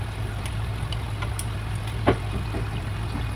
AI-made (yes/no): no